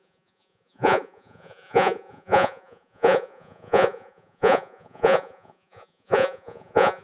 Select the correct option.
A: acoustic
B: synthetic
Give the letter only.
B